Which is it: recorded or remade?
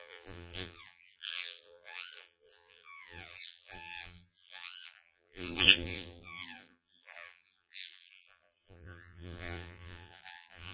remade